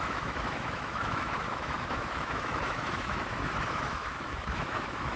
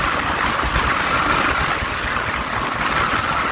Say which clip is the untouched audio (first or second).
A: second